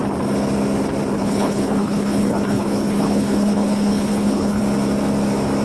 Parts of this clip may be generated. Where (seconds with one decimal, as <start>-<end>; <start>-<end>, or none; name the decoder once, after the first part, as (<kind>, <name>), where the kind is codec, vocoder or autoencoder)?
1.2-4.6 (codec, HILCodec)